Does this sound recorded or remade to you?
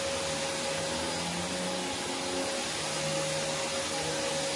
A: recorded